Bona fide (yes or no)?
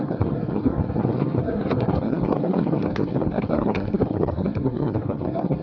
no